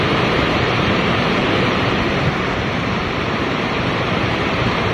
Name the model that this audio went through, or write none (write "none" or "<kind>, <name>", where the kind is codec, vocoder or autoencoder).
vocoder, BigVGAN v2